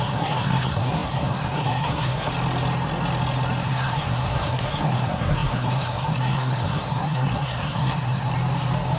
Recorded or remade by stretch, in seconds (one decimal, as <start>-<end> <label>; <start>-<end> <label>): 0.0-2.3 remade; 2.3-3.6 recorded; 3.6-8.3 remade; 8.3-9.0 recorded

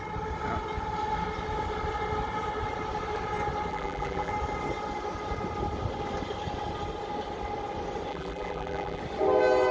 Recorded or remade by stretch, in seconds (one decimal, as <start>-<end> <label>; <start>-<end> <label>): 0.0-3.7 recorded; 3.7-4.3 remade; 4.3-8.1 recorded; 8.1-9.0 remade; 9.0-9.7 recorded

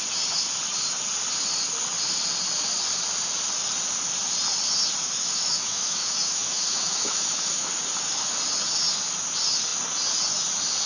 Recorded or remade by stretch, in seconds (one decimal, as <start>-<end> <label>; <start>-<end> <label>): 0.0-5.0 recorded; 5.0-7.7 remade; 7.7-10.9 recorded